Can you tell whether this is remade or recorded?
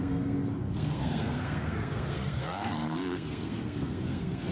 remade